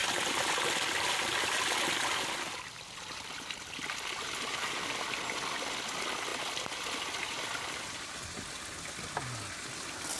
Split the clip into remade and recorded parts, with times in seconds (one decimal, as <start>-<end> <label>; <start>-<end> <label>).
0.0-10.2 recorded